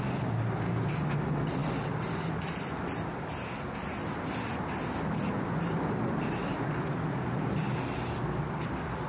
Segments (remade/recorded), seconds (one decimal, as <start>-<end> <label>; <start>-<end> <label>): 0.0-9.1 recorded